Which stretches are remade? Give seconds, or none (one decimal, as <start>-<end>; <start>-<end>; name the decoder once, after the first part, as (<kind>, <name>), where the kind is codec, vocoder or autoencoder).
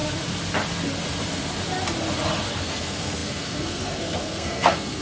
2.6-5.0 (codec, SNAC)